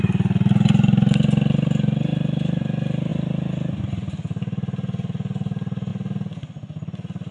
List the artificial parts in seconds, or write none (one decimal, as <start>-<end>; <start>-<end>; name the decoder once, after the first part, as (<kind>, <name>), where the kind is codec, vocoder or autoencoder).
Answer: none